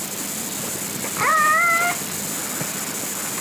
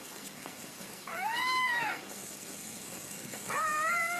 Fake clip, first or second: second